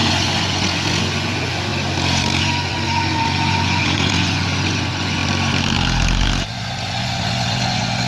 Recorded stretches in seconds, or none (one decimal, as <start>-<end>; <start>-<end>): 1.7-2.4; 5.2-6.5